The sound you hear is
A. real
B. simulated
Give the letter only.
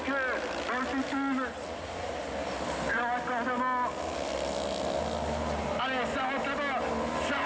A